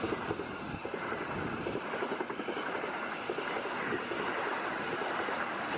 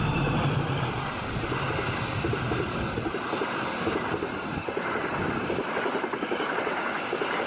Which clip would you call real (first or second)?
first